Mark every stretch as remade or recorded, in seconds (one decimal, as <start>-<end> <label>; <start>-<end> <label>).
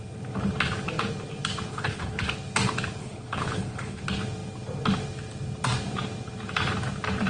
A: 0.0-1.7 recorded; 1.7-2.3 remade; 2.3-3.0 recorded; 3.0-4.0 remade; 4.0-7.3 recorded